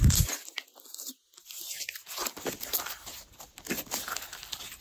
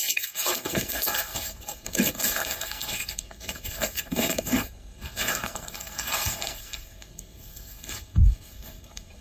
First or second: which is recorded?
first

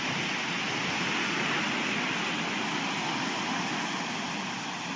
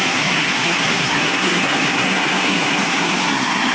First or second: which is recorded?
first